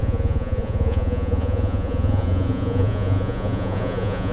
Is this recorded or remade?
remade